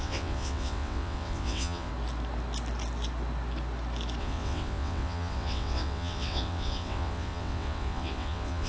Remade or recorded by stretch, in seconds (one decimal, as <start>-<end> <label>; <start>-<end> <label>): 0.0-1.9 remade; 1.9-4.2 recorded; 4.2-8.7 remade